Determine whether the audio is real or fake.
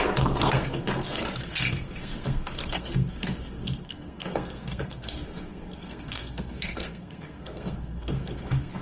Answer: fake